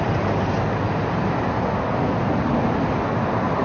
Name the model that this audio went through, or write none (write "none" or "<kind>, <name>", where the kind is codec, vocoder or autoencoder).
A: none